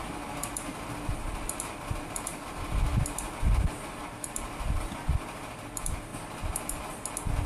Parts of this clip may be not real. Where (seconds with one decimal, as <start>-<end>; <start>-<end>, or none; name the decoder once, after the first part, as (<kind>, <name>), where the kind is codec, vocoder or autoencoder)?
none